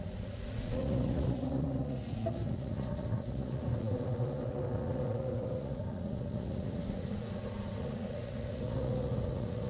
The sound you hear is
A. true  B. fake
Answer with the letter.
B